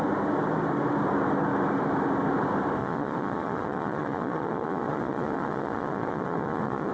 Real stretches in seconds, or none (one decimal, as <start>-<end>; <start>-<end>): 0.0-2.8